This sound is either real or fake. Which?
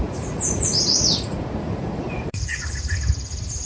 fake